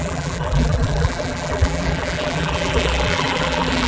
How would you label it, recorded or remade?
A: remade